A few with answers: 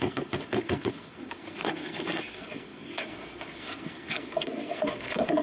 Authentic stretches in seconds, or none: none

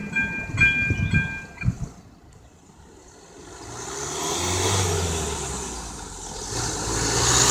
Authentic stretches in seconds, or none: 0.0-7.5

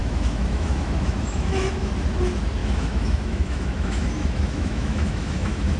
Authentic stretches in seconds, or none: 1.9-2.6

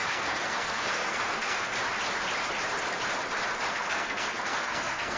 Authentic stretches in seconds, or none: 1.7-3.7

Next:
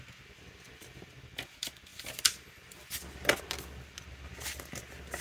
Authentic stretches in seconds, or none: 0.0-1.9; 3.4-5.2